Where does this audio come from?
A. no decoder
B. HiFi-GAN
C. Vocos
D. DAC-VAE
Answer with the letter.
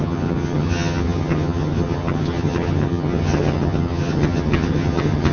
B